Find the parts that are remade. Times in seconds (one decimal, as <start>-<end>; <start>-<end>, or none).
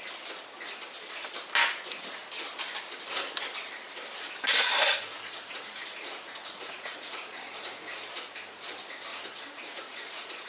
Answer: 4.9-5.8; 6.4-8.0; 9.1-10.5